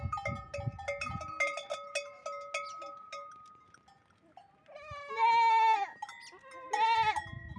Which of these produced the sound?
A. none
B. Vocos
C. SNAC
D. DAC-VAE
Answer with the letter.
A